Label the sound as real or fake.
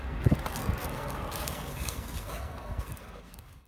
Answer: fake